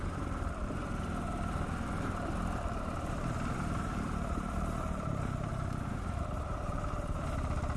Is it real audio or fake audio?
fake